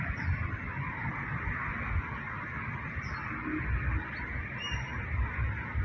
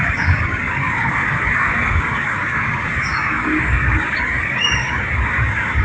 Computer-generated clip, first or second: second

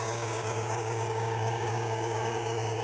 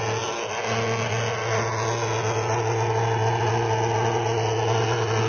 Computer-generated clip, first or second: first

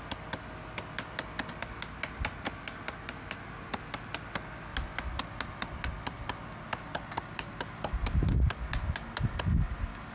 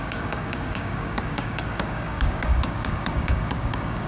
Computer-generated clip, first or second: second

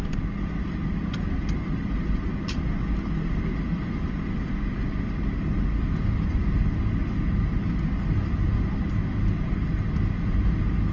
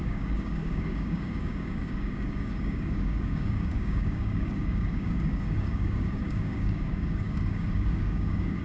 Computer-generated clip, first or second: second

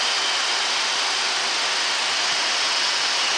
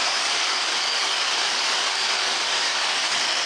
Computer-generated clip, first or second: second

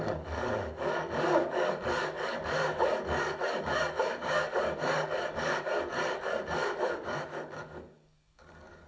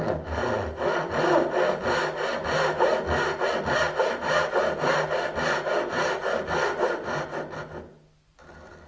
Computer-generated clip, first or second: first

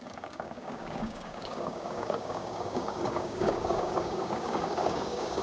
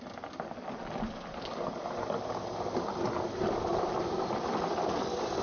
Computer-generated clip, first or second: first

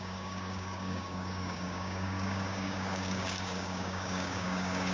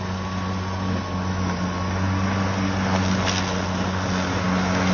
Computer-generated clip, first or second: first